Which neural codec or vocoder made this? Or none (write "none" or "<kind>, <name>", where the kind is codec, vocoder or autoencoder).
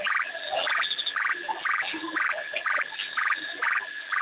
vocoder, BigVGAN v2